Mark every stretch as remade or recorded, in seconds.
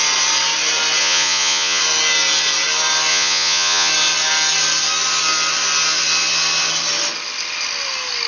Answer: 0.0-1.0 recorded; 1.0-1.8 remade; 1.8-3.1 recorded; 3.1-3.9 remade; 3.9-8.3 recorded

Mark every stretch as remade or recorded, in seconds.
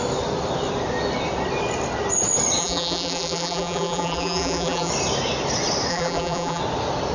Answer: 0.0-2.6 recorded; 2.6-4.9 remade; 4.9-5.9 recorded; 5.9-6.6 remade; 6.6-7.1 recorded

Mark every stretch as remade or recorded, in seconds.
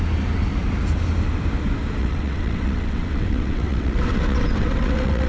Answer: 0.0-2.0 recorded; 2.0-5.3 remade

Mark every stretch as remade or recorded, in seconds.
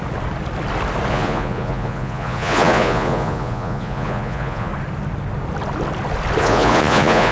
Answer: 0.0-1.1 recorded; 1.1-4.7 remade; 4.7-6.4 recorded; 6.4-7.3 remade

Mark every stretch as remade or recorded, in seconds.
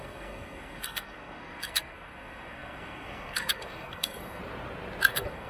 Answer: 0.0-4.4 remade; 4.4-5.1 recorded; 5.1-5.5 remade